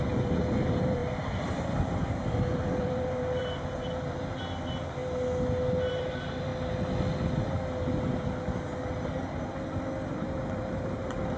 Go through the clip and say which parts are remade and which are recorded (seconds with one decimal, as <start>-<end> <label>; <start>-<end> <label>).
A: 0.0-5.0 remade; 5.0-5.9 recorded; 5.9-6.5 remade; 6.5-10.1 recorded; 10.1-11.4 remade